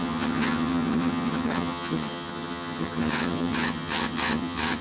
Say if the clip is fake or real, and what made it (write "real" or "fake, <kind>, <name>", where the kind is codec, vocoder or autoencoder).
fake, vocoder, HiFi-GAN